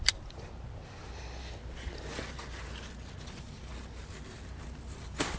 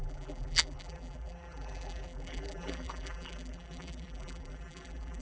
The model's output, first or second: second